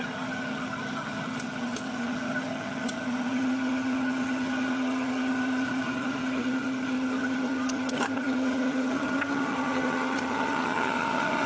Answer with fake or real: fake